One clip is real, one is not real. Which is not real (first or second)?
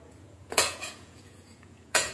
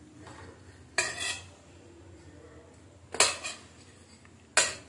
first